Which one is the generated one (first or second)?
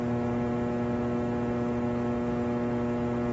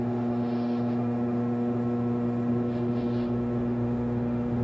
second